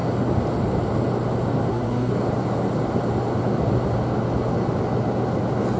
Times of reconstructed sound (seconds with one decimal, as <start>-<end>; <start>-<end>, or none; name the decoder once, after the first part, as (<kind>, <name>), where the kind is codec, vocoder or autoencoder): 1.7-2.1 (codec, SNAC)